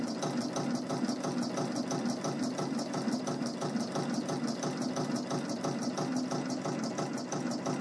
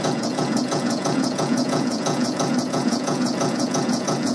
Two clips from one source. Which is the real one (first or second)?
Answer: first